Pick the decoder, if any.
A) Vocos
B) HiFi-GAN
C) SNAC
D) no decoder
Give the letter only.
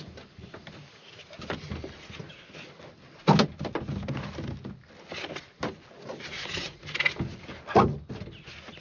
D